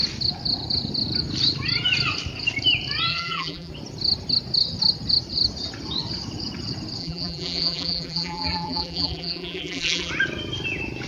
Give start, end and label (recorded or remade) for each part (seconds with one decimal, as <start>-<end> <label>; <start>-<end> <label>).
0.0-3.1 recorded; 3.1-3.7 remade; 3.7-7.0 recorded; 7.0-10.1 remade; 10.1-11.1 recorded